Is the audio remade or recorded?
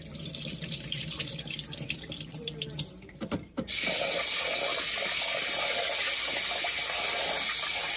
remade